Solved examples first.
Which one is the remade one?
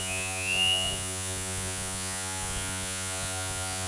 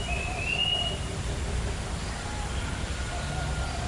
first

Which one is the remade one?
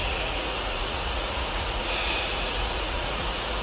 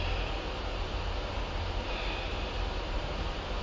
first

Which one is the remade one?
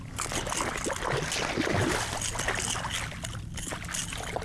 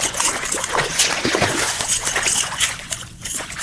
second